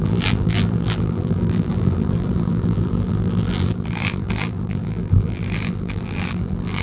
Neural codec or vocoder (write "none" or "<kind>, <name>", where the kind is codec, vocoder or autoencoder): vocoder, BigVGAN v2